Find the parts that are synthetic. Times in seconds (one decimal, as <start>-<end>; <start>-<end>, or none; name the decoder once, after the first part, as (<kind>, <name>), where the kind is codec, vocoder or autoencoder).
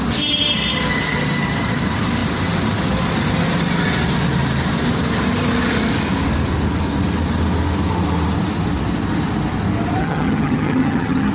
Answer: 10.0-11.3 (vocoder, HiFi-GAN)